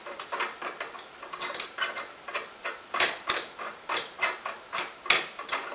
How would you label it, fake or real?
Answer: real